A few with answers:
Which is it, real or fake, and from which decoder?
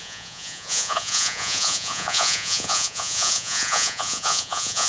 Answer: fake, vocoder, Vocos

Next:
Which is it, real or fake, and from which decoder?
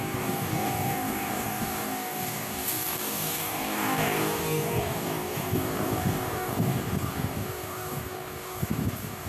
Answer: fake, codec, DAC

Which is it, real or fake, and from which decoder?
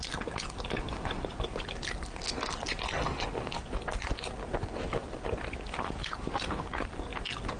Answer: real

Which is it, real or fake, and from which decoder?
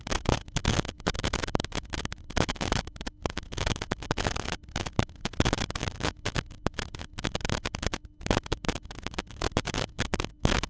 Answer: fake, autoencoder, DAC-VAE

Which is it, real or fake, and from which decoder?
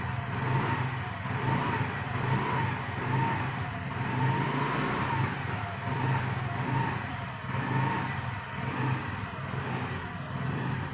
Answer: real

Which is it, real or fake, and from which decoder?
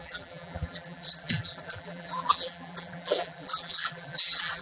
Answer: fake, vocoder, BigVGAN v2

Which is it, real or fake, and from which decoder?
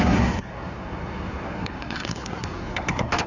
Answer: fake, codec, SNAC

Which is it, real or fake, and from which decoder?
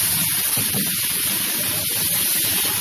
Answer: real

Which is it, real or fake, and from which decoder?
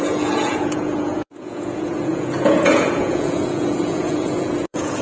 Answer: fake, vocoder, Vocos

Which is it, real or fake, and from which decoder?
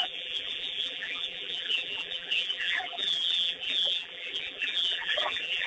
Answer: fake, vocoder, BigVGAN v2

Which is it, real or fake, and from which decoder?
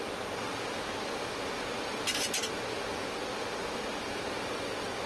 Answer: real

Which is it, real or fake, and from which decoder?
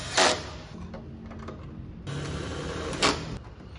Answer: real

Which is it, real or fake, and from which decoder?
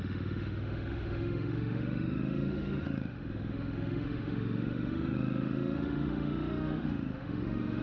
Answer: fake, autoencoder, DAC-VAE